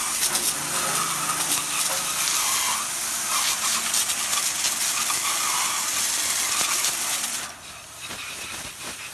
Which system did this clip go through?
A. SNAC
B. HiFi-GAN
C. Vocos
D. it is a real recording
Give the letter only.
D